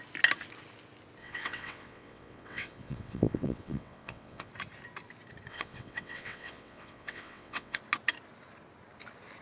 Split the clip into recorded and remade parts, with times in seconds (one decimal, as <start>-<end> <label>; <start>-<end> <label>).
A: 0.0-1.2 recorded; 1.2-4.5 remade; 4.5-5.5 recorded; 5.5-7.8 remade; 7.8-9.4 recorded

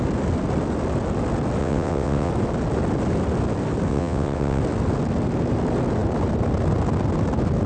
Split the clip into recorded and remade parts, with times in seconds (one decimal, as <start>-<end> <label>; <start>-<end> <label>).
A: 0.0-1.6 recorded; 1.6-2.3 remade; 2.3-3.9 recorded; 3.9-4.6 remade; 4.6-7.7 recorded

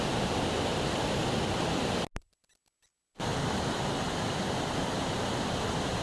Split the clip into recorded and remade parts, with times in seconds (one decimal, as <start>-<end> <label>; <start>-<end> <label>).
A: 0.0-6.0 recorded

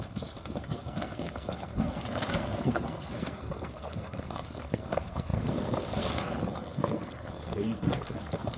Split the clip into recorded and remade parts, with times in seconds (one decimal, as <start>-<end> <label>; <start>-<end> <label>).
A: 0.0-8.6 remade

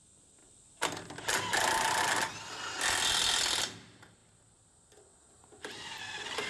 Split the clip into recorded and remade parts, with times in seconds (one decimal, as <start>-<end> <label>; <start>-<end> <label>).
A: 0.0-6.5 recorded

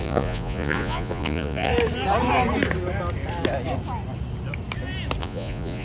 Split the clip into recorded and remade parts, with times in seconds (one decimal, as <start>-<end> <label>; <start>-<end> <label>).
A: 0.0-1.7 remade; 1.7-5.2 recorded; 5.2-5.8 remade

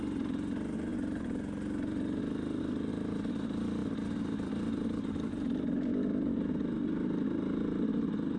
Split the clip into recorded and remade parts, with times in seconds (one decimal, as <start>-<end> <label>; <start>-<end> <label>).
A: 0.0-0.9 remade; 0.9-2.6 recorded; 2.6-3.8 remade; 3.8-8.4 recorded